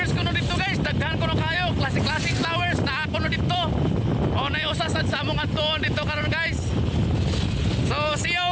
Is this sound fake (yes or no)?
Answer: no